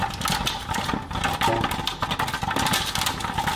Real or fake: real